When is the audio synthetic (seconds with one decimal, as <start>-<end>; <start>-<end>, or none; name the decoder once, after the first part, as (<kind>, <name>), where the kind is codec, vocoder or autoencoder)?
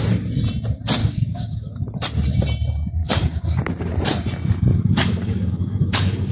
1.0-1.8 (codec, DAC); 3.0-3.6; 4.7-6.3